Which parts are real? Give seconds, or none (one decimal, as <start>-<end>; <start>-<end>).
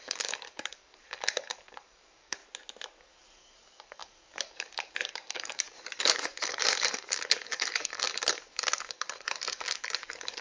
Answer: 2.4-3.0